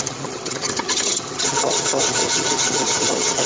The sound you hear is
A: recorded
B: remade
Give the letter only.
B